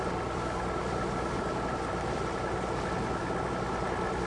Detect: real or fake real